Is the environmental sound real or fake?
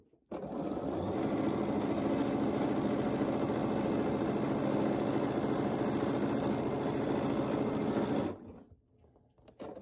real